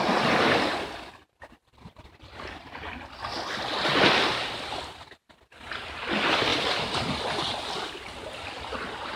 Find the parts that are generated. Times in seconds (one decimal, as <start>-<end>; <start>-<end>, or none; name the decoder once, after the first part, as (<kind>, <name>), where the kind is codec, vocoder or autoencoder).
none